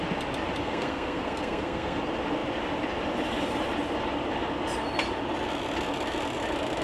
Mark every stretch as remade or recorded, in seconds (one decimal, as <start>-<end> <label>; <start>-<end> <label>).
0.0-0.6 recorded; 0.6-2.0 remade; 2.0-6.8 recorded